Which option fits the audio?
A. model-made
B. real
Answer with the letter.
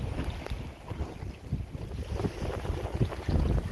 B